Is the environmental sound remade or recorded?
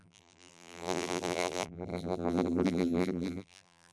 remade